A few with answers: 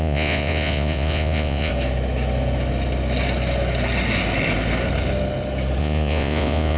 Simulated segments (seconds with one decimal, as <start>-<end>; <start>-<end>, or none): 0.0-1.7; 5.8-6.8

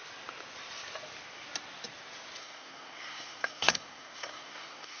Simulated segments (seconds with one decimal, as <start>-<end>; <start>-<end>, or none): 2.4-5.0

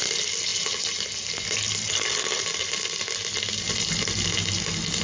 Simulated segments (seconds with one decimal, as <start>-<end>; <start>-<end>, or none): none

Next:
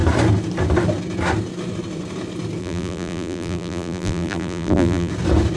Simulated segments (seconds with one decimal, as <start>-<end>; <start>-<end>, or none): 2.6-5.1

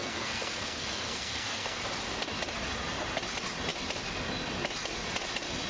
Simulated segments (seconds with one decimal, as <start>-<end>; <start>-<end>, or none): 0.0-1.8